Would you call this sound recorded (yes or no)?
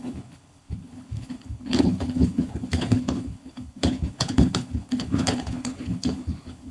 no